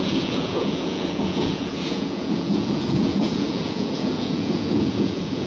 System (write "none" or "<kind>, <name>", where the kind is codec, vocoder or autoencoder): vocoder, Vocos